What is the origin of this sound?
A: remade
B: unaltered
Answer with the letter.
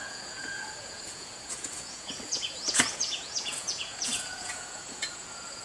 A